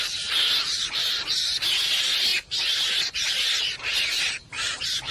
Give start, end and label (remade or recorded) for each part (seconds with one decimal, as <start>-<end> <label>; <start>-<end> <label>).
0.0-5.1 recorded

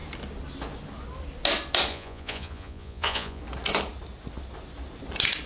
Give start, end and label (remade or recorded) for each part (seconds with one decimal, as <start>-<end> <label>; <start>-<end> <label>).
0.0-1.9 recorded; 1.9-3.4 remade; 3.4-5.5 recorded